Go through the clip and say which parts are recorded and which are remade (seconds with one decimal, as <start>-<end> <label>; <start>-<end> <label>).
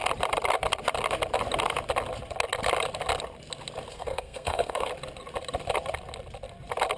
0.0-3.9 recorded; 3.9-4.9 remade; 4.9-7.0 recorded